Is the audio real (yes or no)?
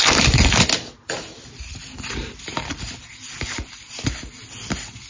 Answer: yes